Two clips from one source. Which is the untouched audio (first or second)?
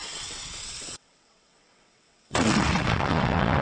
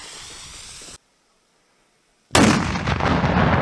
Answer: second